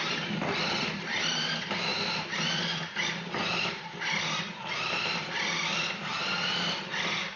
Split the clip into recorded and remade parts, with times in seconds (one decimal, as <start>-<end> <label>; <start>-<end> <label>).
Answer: 0.0-7.4 recorded